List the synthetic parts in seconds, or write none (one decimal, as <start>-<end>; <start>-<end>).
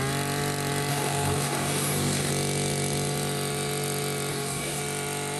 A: 0.9-2.3; 4.3-4.8